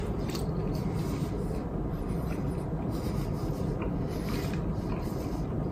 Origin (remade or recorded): remade